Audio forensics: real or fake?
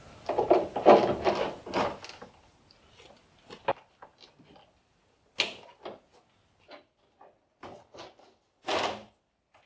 real